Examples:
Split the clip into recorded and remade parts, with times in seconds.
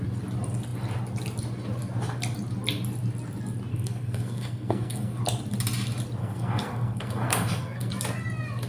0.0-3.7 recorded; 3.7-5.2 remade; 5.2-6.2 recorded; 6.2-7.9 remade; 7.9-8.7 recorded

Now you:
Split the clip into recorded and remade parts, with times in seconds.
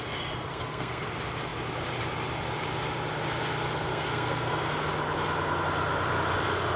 0.0-0.5 recorded; 0.5-1.1 remade; 1.1-3.9 recorded; 3.9-4.7 remade; 4.7-6.8 recorded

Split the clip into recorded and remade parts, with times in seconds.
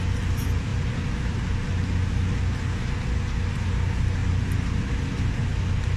0.0-6.0 recorded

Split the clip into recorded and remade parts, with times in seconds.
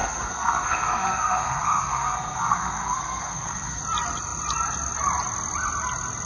0.0-3.8 remade; 3.8-6.3 recorded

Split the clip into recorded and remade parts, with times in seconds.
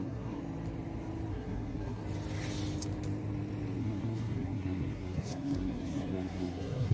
0.0-0.4 remade; 0.4-1.3 recorded; 1.3-2.0 remade; 2.0-3.8 recorded; 3.8-6.9 remade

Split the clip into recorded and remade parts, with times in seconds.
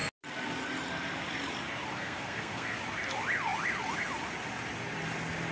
0.0-2.0 recorded; 2.0-2.7 remade; 2.7-5.5 recorded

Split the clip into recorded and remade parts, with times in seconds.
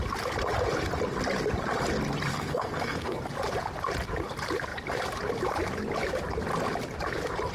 0.0-2.3 recorded; 2.3-3.2 remade; 3.2-7.5 recorded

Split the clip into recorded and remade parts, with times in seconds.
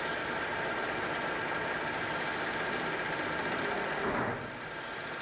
0.0-5.2 recorded